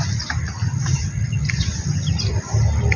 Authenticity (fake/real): real